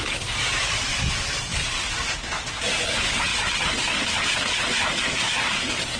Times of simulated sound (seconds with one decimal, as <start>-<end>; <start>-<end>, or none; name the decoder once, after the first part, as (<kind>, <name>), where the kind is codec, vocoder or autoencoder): none